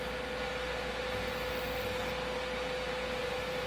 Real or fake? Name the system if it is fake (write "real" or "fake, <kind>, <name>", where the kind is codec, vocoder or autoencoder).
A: real